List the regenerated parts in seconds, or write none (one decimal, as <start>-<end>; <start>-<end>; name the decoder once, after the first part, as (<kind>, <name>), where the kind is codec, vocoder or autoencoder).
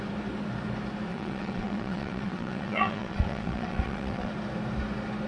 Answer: 1.1-4.3 (vocoder, WaveNeXt)